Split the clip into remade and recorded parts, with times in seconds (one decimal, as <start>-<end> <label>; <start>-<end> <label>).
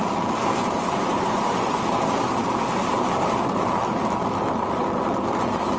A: 0.0-0.6 recorded; 0.6-1.8 remade; 1.8-5.8 recorded